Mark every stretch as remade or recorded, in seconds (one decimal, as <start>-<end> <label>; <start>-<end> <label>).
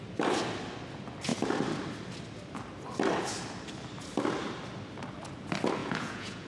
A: 0.0-5.8 recorded; 5.8-6.5 remade